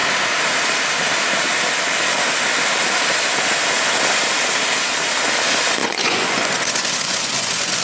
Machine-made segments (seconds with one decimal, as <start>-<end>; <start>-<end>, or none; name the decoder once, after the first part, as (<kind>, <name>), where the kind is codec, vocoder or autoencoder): 5.8-7.8 (vocoder, Vocos)